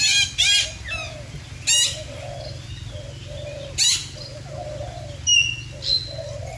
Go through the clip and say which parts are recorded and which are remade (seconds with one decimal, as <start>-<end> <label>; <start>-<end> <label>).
0.0-6.6 recorded